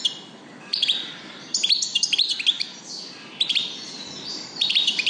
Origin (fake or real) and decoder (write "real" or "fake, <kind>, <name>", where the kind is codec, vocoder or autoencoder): fake, vocoder, BigVGAN v2